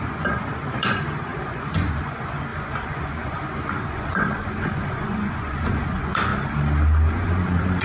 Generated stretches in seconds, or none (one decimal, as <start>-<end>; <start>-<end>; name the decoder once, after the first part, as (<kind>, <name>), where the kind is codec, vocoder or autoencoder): 0.0-6.3 (vocoder, Vocos); 7.1-7.8